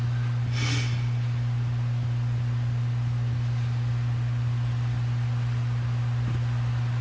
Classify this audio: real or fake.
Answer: real